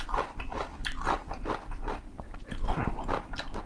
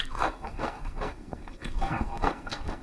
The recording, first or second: first